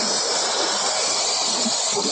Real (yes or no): no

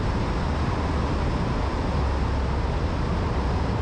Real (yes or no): yes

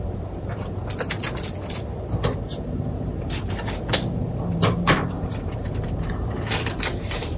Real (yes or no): no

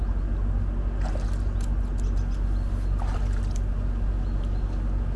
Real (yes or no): yes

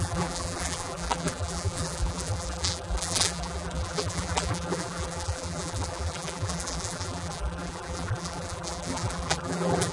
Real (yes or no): no